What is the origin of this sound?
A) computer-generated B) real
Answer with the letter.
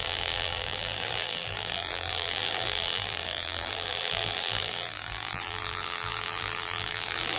A